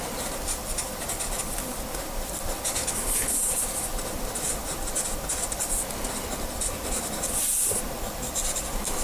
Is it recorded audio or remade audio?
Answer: remade